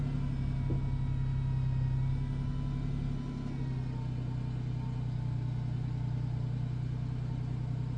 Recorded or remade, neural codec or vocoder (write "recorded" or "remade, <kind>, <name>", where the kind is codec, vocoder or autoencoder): recorded